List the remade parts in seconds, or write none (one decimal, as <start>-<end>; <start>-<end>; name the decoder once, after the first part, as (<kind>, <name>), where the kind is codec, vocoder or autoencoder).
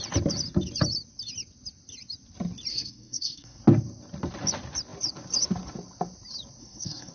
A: 2.7-3.6 (codec, SNAC); 6.6-7.1